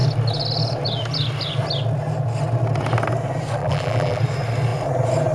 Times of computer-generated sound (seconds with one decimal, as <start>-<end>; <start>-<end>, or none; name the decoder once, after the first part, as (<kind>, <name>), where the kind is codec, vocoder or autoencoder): 3.6-4.2 (vocoder, BigVGAN v2)